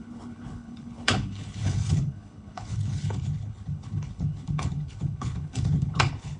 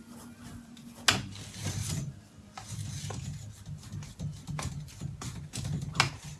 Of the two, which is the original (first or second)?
second